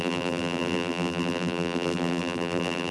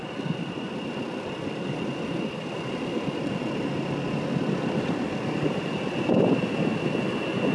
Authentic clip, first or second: second